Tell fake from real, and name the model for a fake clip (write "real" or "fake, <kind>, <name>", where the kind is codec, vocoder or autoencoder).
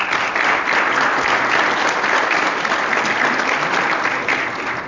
real